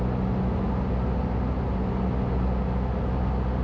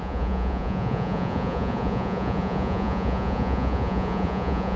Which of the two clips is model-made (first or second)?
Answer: second